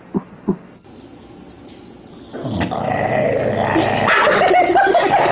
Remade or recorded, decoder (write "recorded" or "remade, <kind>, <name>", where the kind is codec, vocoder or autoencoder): recorded